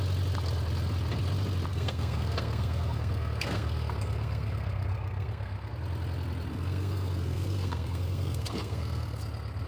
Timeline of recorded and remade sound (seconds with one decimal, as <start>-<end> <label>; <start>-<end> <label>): 0.0-1.7 recorded; 1.7-5.7 remade; 5.7-6.5 recorded; 6.5-9.2 remade; 9.2-9.7 recorded